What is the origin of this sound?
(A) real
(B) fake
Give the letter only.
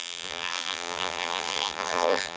B